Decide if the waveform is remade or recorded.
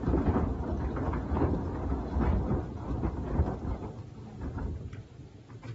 recorded